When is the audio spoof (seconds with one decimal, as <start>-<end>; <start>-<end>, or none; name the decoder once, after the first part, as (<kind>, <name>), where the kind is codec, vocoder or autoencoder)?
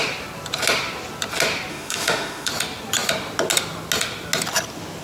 1.7-2.5 (autoencoder, DAC-VAE)